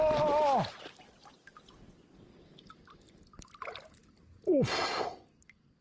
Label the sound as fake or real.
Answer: real